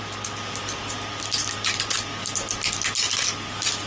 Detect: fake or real real